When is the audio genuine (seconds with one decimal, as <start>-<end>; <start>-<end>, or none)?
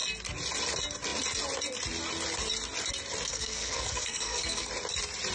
0.0-3.3; 4.7-5.3